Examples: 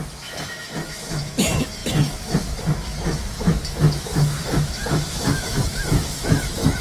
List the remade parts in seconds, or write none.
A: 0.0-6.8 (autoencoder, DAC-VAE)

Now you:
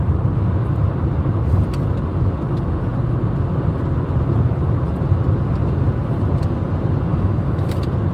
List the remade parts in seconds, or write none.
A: 7.1-7.6 (autoencoder, DAC-VAE)

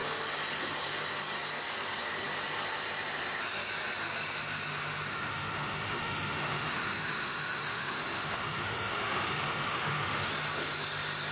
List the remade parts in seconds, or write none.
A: 5.1-10.3 (autoencoder, DAC-VAE)

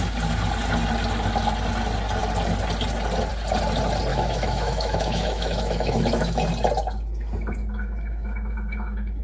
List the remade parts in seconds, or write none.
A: 4.1-6.4 (autoencoder, DAC-VAE); 7.6-9.2

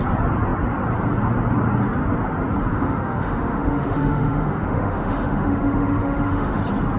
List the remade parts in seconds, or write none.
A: 2.7-6.6 (autoencoder, DAC-VAE)

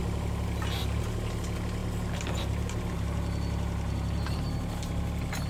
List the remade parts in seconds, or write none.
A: none

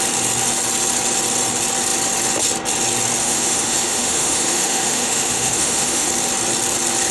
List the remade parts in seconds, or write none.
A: 3.2-6.1 (autoencoder, DAC-VAE)

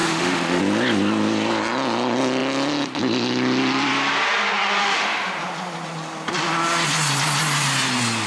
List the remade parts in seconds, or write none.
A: 0.0-0.6 (autoencoder, DAC-VAE); 4.8-5.3